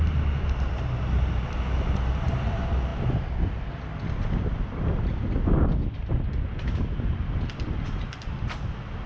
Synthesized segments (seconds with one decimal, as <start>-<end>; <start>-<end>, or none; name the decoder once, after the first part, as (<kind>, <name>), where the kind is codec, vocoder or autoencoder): none